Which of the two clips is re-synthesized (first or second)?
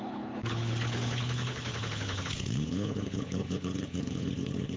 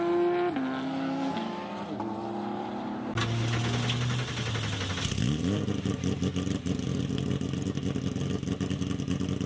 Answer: first